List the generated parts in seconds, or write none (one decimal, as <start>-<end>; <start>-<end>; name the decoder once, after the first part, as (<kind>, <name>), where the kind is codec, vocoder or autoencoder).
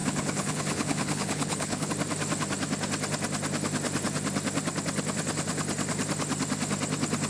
0.0-1.9 (codec, HILCodec)